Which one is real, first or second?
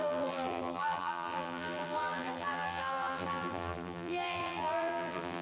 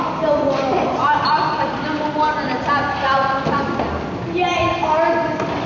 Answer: second